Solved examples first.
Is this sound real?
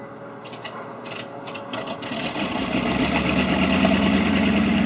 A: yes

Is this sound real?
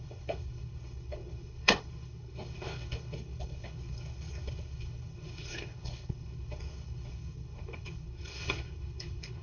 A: no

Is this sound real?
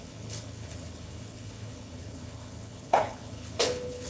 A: no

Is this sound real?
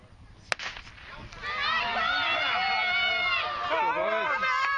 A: yes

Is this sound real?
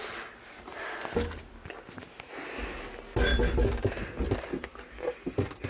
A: yes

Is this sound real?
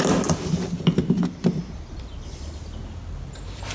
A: yes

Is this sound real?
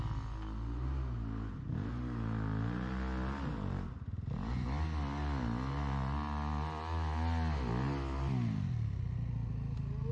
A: yes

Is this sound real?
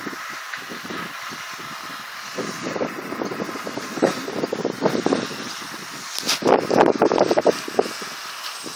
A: yes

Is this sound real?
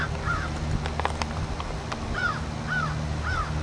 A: yes